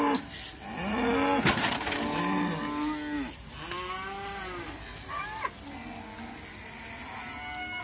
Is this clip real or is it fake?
real